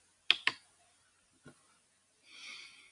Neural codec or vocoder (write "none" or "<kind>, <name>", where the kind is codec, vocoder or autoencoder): none